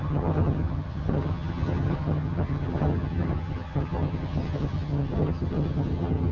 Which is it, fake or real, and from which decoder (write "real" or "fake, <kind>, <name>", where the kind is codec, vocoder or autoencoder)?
fake, vocoder, HiFi-GAN